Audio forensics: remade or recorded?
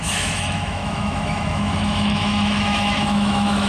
remade